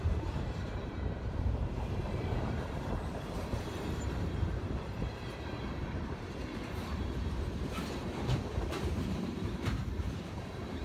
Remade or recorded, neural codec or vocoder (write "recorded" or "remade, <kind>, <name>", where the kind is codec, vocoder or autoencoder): remade, vocoder, BigVGAN v2